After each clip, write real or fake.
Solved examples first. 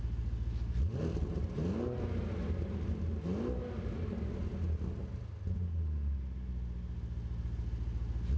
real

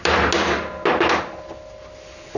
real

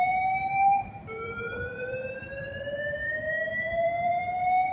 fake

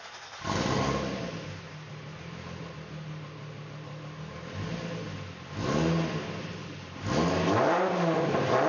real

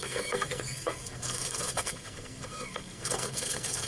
fake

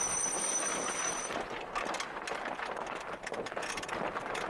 real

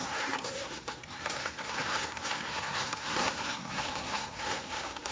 fake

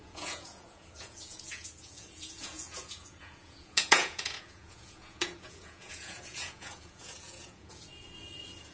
fake